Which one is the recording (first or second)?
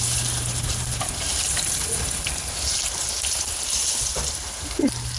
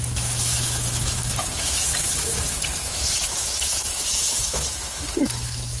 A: first